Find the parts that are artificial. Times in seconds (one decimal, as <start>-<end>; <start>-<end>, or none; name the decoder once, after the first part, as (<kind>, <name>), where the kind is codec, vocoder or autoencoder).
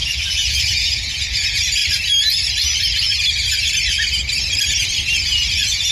0.0-1.8 (vocoder, Vocos); 5.2-5.9